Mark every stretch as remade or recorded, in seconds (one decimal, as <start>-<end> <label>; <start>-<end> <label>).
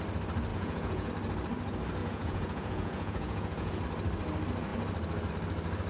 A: 0.0-0.5 recorded; 0.5-1.1 remade; 1.1-2.0 recorded; 2.0-3.8 remade; 3.8-5.9 recorded